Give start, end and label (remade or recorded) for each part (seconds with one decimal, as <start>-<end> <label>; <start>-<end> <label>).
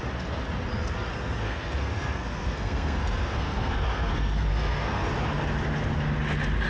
0.0-1.1 recorded; 1.1-5.1 remade; 5.1-6.7 recorded